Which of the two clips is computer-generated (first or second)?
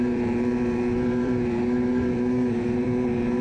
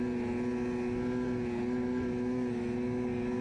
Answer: first